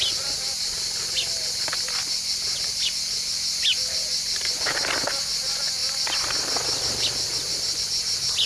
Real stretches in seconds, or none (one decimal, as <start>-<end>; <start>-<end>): 0.0-8.5